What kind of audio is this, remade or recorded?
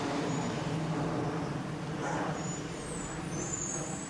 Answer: recorded